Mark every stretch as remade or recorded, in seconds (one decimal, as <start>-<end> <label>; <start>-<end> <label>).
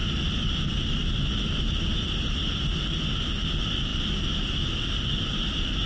0.0-5.9 recorded